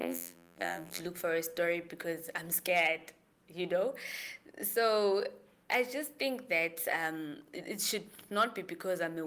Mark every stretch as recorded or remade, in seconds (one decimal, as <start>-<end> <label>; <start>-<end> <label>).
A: 0.0-1.0 remade; 1.0-9.3 recorded